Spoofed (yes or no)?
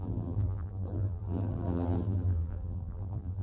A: yes